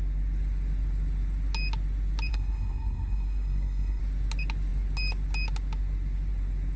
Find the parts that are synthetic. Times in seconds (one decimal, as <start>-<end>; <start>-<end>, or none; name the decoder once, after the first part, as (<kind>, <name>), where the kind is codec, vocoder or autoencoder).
2.3-4.0 (codec, SNAC)